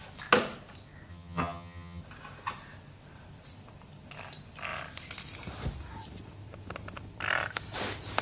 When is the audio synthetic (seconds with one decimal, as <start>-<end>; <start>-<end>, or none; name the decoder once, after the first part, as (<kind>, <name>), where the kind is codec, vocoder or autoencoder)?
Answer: 1.1-2.0 (vocoder, HiFi-GAN)

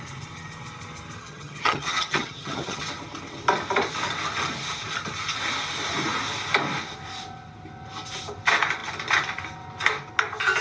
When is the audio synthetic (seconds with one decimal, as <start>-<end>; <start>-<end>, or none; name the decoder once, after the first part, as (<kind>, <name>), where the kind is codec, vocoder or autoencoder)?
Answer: 1.2-2.8 (vocoder, HiFi-GAN)

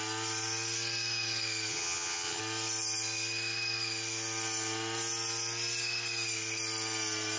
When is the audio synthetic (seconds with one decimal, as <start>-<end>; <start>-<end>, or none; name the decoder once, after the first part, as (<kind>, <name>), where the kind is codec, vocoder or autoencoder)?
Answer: 1.7-2.4 (vocoder, HiFi-GAN)